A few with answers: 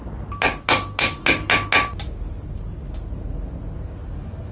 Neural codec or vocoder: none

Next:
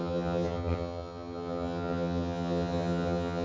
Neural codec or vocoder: vocoder, HiFi-GAN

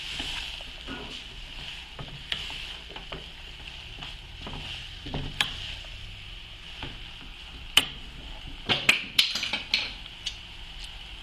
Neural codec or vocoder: none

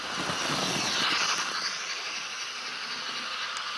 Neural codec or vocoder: none